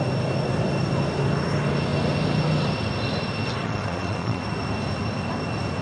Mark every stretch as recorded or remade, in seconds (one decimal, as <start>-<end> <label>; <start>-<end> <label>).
0.0-3.6 recorded; 3.6-4.4 remade; 4.4-5.8 recorded